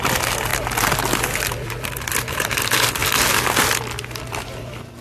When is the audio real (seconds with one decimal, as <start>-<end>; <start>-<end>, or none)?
0.5-1.0; 3.0-4.2